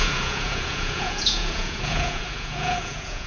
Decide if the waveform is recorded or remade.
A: remade